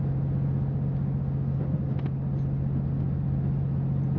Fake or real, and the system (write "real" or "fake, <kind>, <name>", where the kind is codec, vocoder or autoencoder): real